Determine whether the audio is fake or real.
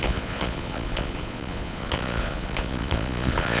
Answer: fake